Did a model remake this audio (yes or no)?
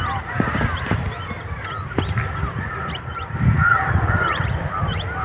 yes